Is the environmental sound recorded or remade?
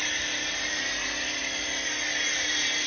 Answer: recorded